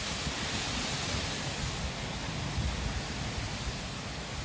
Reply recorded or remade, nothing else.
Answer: recorded